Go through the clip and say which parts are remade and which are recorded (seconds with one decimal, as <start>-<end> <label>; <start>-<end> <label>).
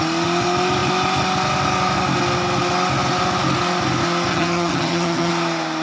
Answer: 0.0-4.3 recorded; 4.3-5.3 remade; 5.3-5.8 recorded